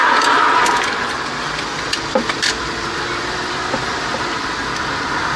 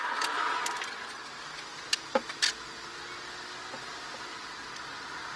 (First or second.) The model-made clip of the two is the first